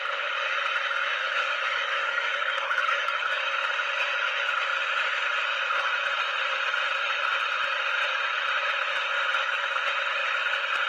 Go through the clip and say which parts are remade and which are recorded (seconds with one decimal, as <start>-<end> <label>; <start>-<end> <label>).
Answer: 0.0-1.2 recorded; 1.2-3.4 remade; 3.4-10.9 recorded